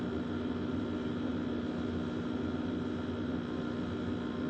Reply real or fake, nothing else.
real